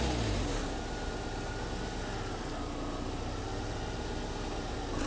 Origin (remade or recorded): recorded